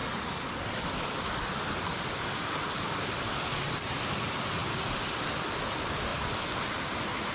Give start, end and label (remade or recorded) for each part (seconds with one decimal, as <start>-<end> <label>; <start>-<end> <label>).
0.0-7.3 recorded